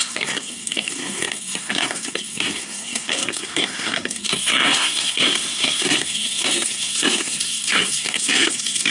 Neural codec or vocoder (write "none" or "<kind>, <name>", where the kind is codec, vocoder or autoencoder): codec, SNAC